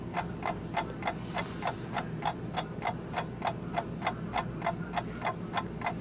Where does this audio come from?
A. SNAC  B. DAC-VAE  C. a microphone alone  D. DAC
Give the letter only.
C